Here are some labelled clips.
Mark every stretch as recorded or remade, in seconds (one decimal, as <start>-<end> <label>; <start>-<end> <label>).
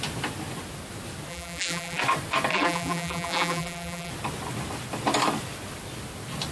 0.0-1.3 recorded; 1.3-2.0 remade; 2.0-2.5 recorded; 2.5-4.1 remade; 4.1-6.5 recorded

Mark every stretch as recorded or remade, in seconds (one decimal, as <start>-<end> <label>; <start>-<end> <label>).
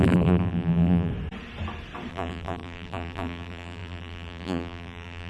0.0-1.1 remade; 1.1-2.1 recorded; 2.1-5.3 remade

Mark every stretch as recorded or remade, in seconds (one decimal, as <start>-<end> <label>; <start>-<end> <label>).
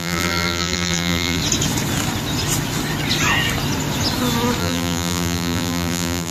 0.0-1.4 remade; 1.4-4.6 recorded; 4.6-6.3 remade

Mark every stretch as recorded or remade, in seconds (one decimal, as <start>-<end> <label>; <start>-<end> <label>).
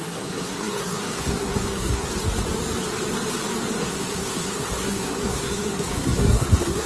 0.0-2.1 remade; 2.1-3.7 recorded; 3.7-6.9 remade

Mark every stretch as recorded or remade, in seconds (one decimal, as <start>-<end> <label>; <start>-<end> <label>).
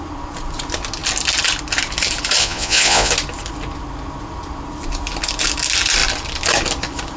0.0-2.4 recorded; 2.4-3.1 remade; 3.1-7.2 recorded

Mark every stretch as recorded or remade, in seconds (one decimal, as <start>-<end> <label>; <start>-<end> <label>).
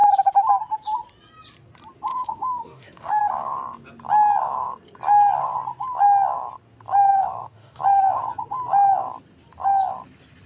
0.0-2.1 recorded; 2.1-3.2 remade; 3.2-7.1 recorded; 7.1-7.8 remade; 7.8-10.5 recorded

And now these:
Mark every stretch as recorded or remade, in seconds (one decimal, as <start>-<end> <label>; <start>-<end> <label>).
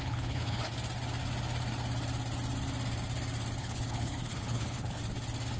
0.0-0.7 remade; 0.7-3.6 recorded; 3.6-5.0 remade; 5.0-5.6 recorded